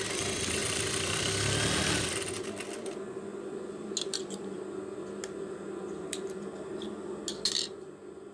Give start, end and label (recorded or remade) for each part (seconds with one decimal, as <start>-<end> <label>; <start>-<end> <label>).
0.0-8.3 recorded